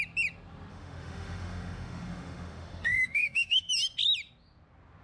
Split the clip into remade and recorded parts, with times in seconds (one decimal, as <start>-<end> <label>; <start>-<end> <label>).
0.0-0.7 recorded; 0.7-3.7 remade; 3.7-5.0 recorded